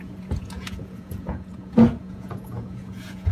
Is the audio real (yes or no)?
no